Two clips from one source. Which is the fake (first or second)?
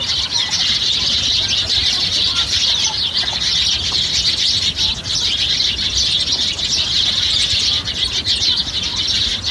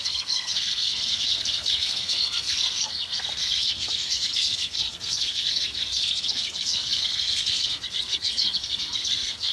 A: second